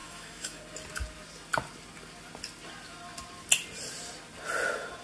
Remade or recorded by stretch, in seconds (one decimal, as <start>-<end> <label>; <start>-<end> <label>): 0.0-0.6 remade; 0.6-5.0 recorded